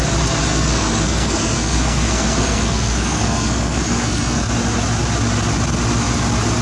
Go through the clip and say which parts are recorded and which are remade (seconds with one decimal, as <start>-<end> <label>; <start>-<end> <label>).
0.0-0.5 recorded; 0.5-4.5 remade; 4.5-6.6 recorded